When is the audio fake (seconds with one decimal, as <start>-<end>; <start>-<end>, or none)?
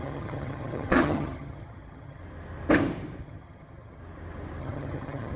0.0-2.2; 3.2-4.0; 4.6-5.4